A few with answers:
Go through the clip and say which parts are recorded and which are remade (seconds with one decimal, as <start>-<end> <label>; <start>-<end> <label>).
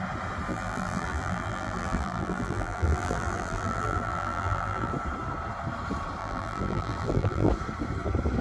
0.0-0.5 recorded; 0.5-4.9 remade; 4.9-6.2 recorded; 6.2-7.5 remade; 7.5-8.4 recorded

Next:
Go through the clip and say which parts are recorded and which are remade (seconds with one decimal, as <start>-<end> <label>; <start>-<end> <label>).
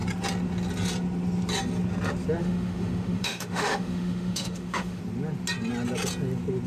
0.0-2.4 recorded; 2.4-5.0 remade; 5.0-6.7 recorded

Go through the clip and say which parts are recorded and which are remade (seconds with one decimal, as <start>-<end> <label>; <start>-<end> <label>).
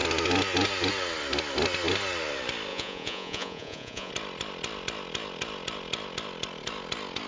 0.0-2.7 recorded; 2.7-4.1 remade; 4.1-7.3 recorded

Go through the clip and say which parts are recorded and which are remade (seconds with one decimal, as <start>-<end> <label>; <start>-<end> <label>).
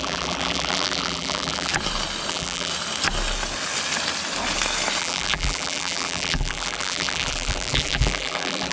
0.0-1.7 remade; 1.7-2.3 recorded; 2.3-2.7 remade; 2.7-5.0 recorded; 5.0-8.7 remade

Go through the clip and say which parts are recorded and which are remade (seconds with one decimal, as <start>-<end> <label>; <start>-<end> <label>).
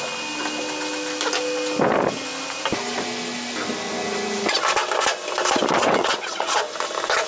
0.0-5.8 recorded; 5.8-6.7 remade; 6.7-7.3 recorded